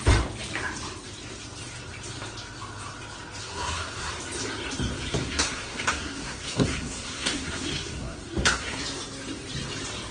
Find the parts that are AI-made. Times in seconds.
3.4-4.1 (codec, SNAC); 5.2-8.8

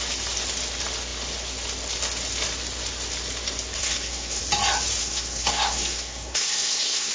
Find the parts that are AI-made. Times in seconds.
3.8-4.4 (codec, SNAC); 5.0-7.1

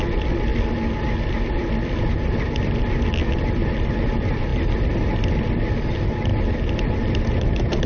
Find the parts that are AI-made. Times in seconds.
none